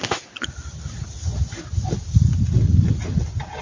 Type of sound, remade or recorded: recorded